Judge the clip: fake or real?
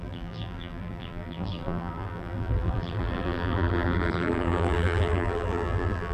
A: fake